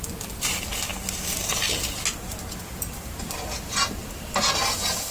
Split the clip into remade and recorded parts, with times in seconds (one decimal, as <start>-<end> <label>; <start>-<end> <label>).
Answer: 0.0-5.1 recorded